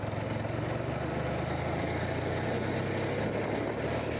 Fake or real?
real